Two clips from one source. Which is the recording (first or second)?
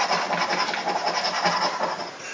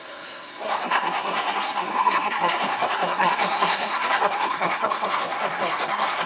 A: first